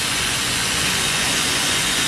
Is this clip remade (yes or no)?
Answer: yes